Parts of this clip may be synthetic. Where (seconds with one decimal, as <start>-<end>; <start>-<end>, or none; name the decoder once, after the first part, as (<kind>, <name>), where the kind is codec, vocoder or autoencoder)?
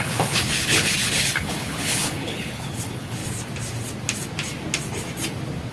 0.0-3.2 (codec, HILCodec)